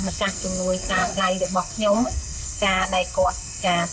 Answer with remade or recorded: remade